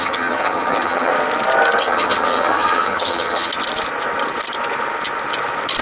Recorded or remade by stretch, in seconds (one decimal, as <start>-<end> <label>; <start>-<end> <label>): 0.0-1.1 remade; 1.1-1.8 recorded; 1.8-3.5 remade; 3.5-5.8 recorded